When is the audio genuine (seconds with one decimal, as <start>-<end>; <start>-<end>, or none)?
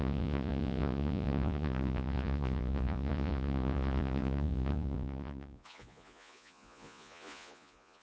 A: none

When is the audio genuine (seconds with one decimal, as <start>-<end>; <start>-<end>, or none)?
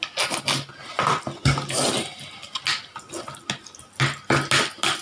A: 0.0-5.0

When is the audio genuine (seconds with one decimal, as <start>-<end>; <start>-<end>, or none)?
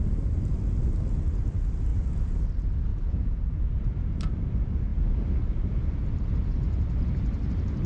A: 0.0-1.9; 2.4-2.9; 3.6-7.9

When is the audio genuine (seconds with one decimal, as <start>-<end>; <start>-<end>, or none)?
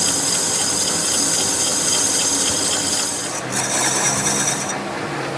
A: 0.0-5.4